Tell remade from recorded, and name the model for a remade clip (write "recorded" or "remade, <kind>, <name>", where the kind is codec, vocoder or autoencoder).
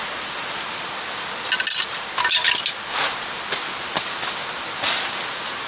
recorded